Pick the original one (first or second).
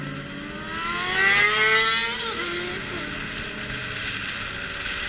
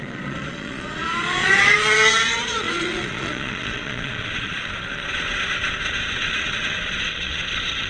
first